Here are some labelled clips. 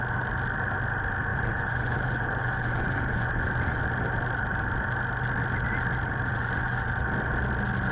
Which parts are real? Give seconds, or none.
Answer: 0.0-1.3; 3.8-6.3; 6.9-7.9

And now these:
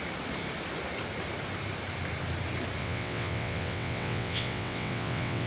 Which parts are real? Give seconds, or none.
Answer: 0.0-2.8

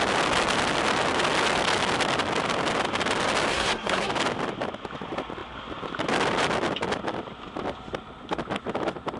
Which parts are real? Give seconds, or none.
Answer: 0.0-3.5; 4.1-9.2